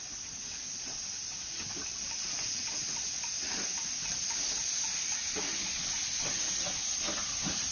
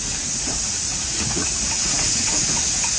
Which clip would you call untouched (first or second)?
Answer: first